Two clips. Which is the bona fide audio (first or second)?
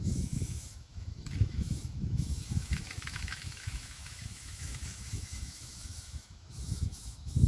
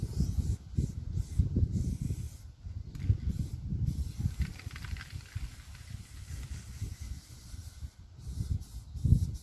second